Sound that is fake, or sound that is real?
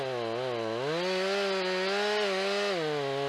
real